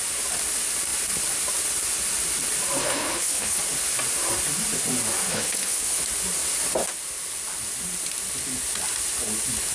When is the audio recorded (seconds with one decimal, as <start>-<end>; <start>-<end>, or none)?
0.0-2.8; 3.6-5.3; 6.0-9.7